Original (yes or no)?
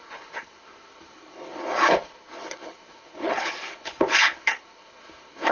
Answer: no